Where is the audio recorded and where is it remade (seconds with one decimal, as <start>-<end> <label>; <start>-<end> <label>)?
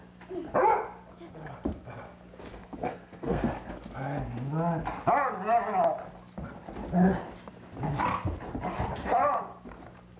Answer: 0.0-2.5 recorded; 2.5-3.5 remade; 3.5-10.2 recorded